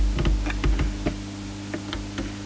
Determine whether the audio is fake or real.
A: real